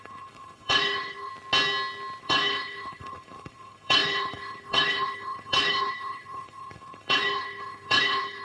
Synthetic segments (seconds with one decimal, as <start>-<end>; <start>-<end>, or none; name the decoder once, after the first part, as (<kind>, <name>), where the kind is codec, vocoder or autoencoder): 0.0-1.3 (codec, HILCodec); 2.2-8.4